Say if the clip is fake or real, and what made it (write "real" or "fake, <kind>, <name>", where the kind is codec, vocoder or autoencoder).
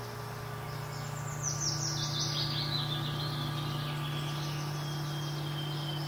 real